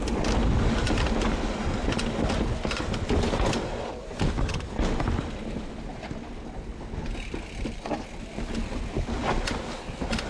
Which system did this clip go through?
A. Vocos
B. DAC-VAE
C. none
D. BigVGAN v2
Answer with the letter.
C